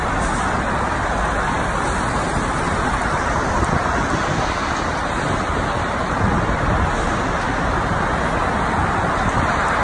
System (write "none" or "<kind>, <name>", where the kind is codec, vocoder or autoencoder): none